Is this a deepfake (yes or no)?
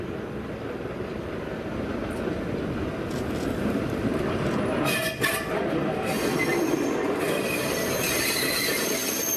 no